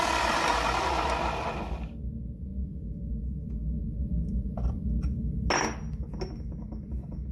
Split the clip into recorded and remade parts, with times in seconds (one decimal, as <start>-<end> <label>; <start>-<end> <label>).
0.0-7.3 recorded